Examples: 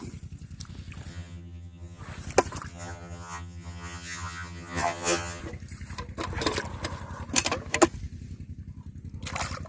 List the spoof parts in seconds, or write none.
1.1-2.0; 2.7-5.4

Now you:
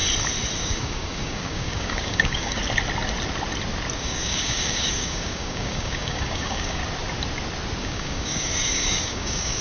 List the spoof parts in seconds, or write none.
0.6-2.6; 4.0-6.8; 7.8-9.6

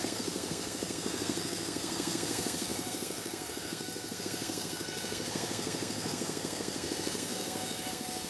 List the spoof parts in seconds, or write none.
0.0-8.3

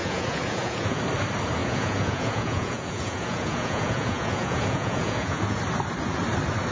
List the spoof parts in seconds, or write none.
0.0-1.0; 1.6-5.6

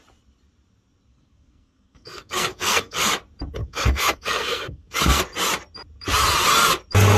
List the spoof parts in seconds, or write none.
1.1-3.1; 3.6-5.2

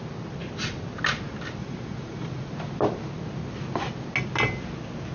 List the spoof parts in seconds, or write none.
1.6-2.5